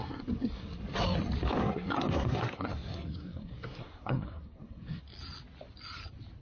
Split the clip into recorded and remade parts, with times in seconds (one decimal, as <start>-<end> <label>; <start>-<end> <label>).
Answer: 0.0-0.8 remade; 0.8-1.6 recorded; 1.6-5.0 remade; 5.0-6.4 recorded